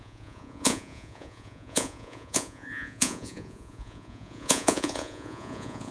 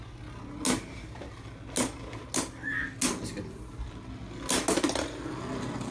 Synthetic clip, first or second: first